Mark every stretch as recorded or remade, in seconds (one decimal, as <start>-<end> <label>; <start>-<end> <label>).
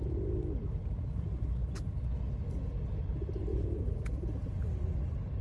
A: 0.0-3.5 recorded; 3.5-4.9 remade; 4.9-5.4 recorded